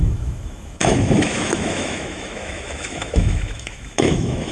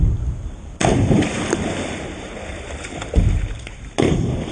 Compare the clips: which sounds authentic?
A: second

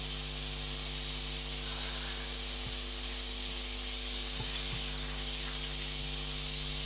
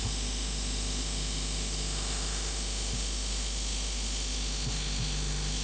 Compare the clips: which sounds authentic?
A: first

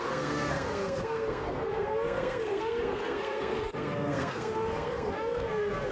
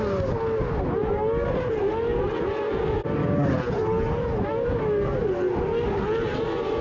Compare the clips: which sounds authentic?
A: second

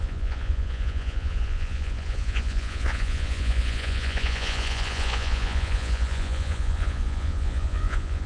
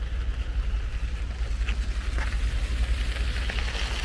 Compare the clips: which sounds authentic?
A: second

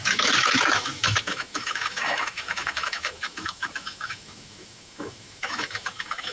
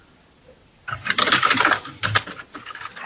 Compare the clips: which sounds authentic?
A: second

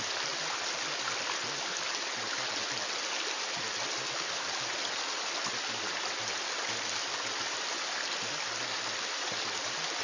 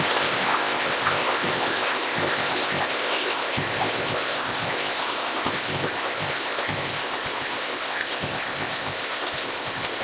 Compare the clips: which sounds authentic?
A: first